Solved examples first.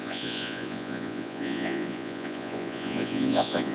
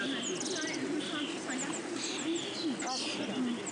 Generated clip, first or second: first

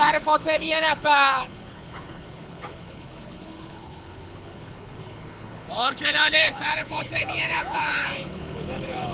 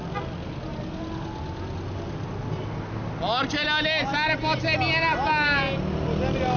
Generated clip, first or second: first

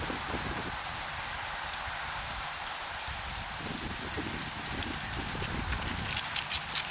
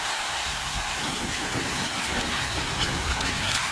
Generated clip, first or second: second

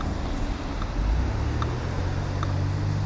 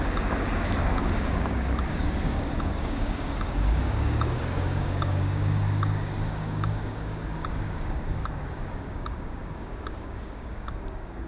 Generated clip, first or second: second